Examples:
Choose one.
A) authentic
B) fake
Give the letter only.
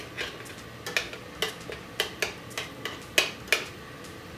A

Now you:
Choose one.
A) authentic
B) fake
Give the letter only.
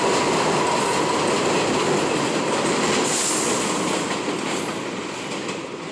A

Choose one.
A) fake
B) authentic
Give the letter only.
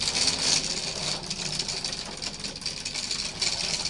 B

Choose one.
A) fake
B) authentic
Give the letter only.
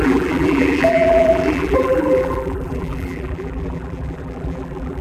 A